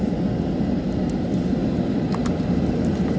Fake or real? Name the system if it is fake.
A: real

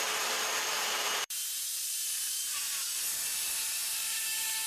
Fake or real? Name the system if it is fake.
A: fake, vocoder, BigVGAN v2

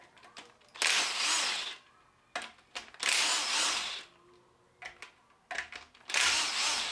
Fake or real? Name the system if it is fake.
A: real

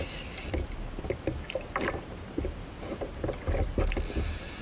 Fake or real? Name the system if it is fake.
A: fake, vocoder, BigVGAN v2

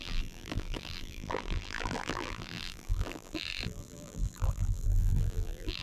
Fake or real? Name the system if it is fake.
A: fake, vocoder, BigVGAN v2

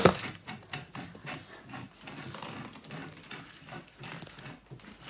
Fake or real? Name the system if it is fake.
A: fake, vocoder, BigVGAN v2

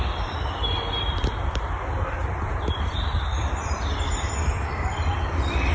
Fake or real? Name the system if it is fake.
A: fake, vocoder, BigVGAN v2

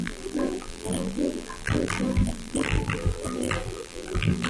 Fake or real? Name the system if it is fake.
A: fake, vocoder, BigVGAN v2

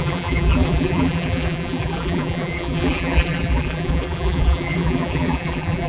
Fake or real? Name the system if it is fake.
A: fake, vocoder, BigVGAN v2